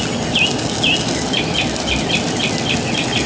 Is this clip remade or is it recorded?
recorded